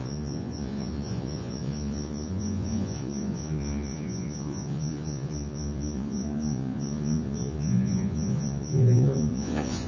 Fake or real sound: fake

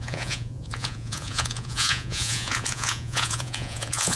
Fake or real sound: fake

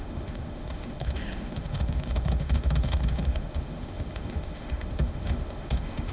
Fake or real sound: fake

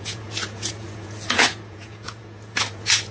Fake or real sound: fake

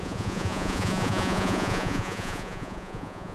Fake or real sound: fake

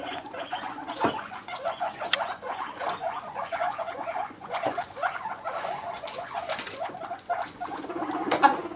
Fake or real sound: fake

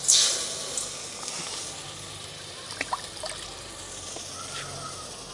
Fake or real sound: real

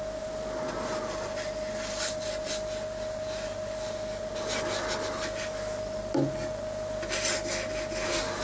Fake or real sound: real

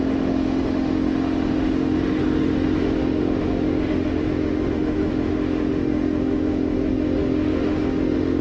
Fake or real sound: fake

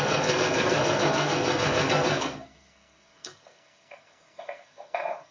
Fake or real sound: fake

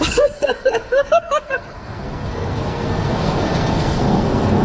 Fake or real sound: fake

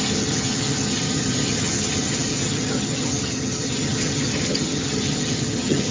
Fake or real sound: fake